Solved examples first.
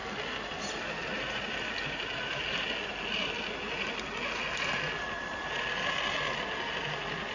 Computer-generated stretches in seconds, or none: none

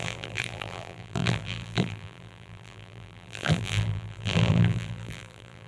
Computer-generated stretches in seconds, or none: 0.0-5.7 (vocoder, BigVGAN v2)